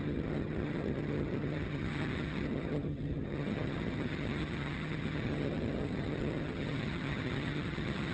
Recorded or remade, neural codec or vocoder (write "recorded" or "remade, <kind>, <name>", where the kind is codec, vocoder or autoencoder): remade, vocoder, HiFi-GAN